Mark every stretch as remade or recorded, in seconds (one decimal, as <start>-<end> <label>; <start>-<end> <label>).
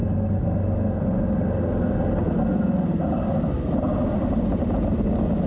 0.0-5.5 recorded